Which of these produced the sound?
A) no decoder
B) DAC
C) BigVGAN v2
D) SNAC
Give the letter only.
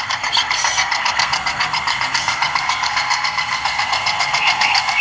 D